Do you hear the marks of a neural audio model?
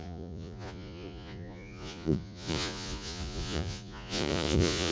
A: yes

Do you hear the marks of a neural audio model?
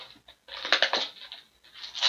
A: no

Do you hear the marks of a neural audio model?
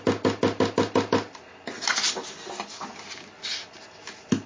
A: no